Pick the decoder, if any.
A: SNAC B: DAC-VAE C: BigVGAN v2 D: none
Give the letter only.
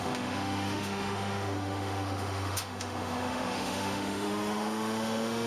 B